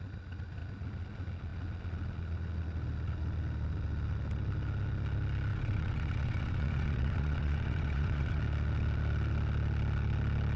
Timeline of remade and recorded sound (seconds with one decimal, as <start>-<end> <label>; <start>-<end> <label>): 0.0-5.5 recorded; 5.5-8.4 remade; 8.4-10.6 recorded